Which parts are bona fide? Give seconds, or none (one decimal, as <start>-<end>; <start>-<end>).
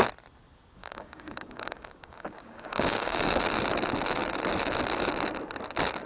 0.0-0.8; 3.4-6.1